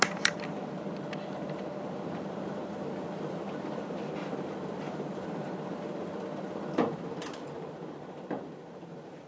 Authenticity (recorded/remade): remade